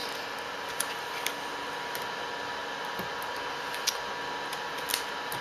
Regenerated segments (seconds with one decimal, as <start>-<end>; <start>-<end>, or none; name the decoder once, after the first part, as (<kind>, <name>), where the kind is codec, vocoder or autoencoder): none